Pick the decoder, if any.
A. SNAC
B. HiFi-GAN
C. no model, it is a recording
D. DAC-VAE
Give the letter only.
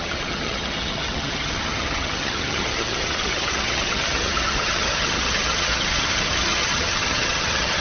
B